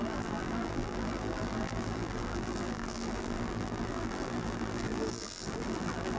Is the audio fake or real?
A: fake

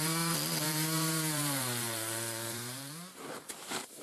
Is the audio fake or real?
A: fake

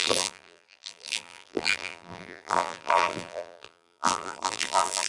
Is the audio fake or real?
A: fake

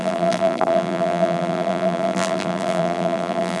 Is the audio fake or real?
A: fake